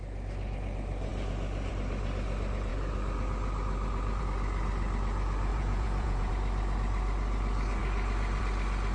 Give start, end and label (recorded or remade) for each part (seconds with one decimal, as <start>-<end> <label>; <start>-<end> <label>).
0.0-5.5 recorded; 5.5-6.3 remade; 6.3-8.9 recorded